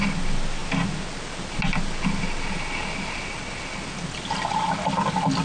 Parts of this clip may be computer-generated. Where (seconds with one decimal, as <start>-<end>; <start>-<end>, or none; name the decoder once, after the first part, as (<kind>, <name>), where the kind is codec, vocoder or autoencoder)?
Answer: none